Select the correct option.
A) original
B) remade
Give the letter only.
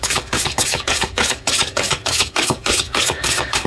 B